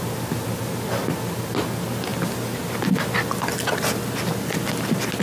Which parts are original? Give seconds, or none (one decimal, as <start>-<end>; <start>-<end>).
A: 0.0-5.2